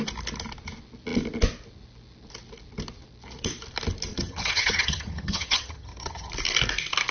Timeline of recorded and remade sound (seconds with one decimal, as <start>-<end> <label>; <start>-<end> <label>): 0.0-4.1 recorded; 4.1-6.3 remade; 6.3-7.1 recorded